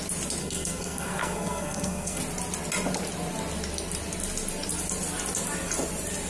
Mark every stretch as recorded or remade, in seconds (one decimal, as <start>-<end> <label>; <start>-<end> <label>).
0.0-0.4 recorded; 0.4-2.2 remade; 2.2-6.3 recorded